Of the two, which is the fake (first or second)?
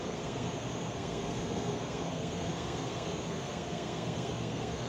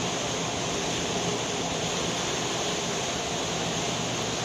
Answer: first